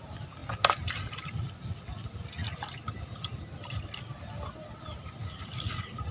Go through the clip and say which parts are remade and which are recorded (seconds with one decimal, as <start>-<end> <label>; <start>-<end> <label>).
0.0-6.1 recorded